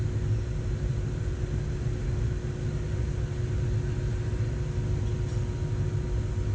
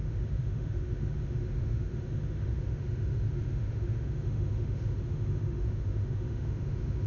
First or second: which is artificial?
second